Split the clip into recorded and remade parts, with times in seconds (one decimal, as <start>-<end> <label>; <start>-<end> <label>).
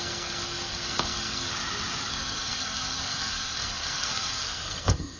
0.0-1.5 remade; 1.5-2.1 recorded; 2.1-5.2 remade